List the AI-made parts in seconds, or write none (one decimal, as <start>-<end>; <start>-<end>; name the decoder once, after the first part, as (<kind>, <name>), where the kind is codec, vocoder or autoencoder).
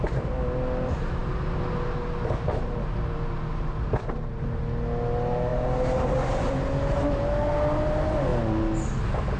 none